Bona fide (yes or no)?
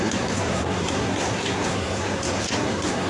no